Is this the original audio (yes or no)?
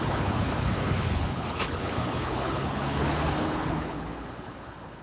no